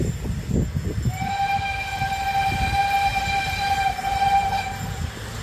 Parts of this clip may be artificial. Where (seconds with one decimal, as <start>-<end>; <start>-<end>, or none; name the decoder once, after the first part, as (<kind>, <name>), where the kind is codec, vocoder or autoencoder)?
3.1-3.7 (vocoder, BigVGAN v2)